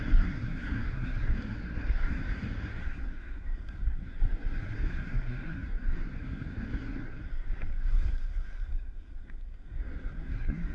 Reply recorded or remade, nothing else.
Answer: remade